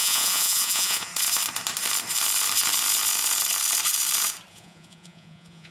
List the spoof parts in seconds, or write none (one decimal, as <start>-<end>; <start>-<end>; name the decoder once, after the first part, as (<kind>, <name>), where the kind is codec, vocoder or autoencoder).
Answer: 0.0-1.1 (vocoder, Vocos); 4.5-5.7